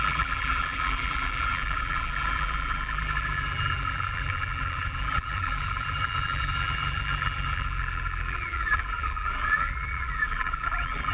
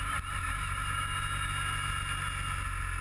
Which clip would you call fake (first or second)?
first